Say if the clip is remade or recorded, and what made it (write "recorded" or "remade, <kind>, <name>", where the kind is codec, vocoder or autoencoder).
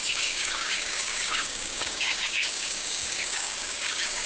remade, codec, DAC